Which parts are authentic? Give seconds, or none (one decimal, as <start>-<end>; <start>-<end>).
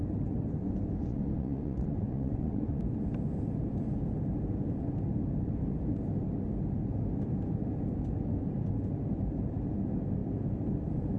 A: 0.0-1.0; 2.8-11.2